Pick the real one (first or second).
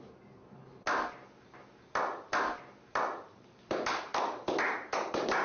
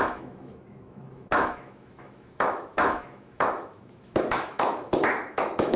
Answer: first